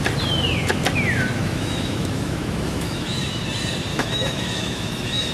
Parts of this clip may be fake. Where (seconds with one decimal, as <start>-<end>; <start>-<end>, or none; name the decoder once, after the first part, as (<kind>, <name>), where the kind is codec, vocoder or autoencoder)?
1.4-3.4 (autoencoder, DAC-VAE); 3.9-5.3